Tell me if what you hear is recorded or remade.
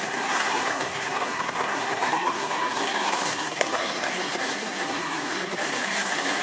remade